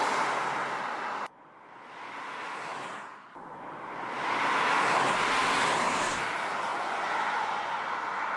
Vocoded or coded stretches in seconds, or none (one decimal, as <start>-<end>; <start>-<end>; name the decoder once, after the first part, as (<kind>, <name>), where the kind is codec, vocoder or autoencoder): 6.7-7.8 (vocoder, Vocos)